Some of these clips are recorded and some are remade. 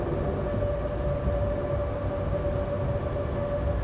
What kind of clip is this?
recorded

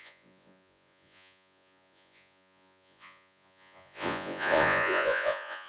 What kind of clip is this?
remade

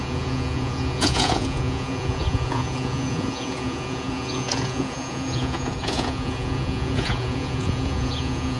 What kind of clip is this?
remade